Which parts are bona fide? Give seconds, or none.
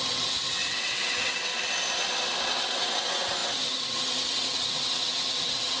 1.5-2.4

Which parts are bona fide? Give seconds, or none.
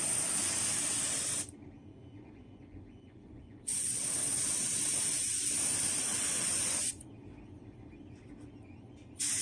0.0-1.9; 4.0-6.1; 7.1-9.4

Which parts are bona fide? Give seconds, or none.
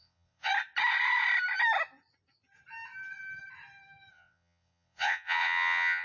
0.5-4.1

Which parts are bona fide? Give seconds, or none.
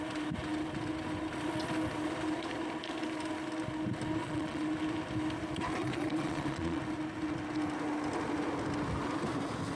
0.0-4.2; 4.7-5.8; 6.8-9.8